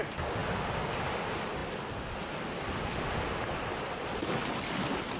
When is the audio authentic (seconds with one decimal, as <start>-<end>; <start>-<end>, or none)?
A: 0.0-5.2